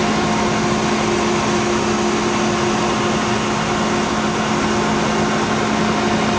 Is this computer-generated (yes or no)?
no